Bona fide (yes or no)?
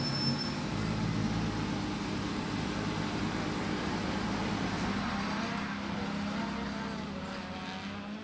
yes